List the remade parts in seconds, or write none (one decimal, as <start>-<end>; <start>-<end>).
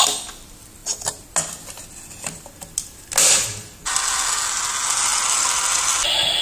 none